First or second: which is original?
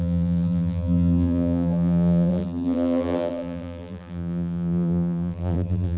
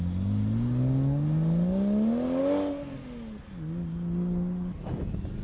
second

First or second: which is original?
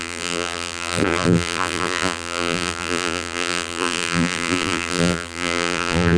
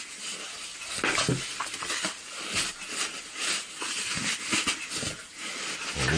second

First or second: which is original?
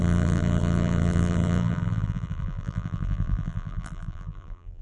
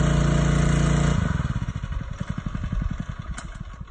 second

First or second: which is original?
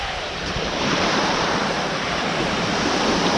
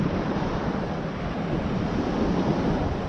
second